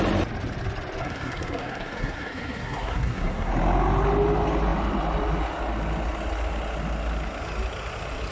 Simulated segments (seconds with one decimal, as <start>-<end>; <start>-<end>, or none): 1.0-3.5